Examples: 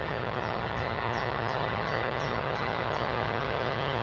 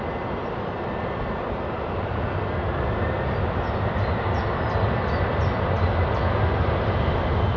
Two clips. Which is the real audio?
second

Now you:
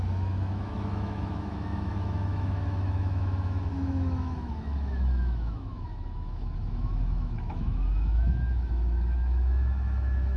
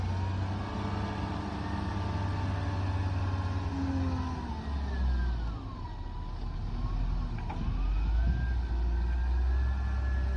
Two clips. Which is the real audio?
second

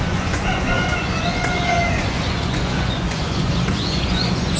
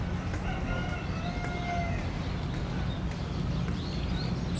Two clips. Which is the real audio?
second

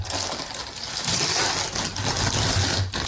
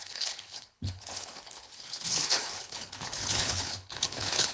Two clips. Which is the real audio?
first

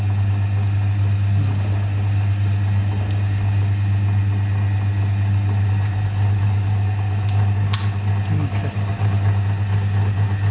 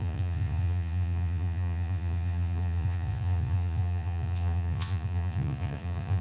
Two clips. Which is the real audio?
first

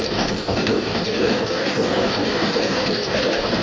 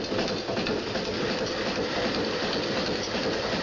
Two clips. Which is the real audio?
second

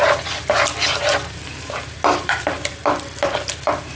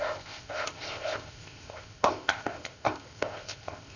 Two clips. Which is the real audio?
first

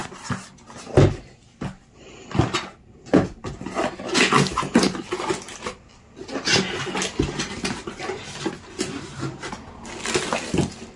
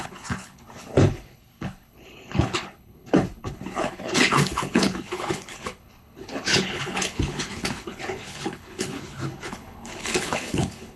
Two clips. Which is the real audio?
first